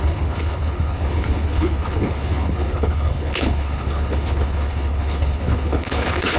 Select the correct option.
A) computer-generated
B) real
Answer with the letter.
A